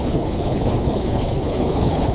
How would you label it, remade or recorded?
remade